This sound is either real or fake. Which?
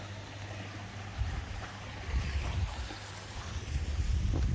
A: real